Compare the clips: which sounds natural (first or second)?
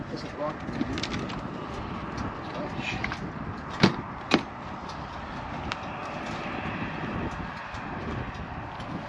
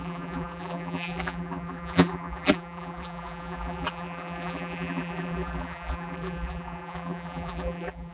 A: first